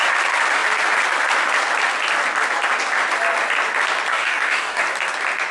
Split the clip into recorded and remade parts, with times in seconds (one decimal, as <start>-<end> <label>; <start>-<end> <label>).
0.0-4.1 recorded; 4.1-4.8 remade; 4.8-5.5 recorded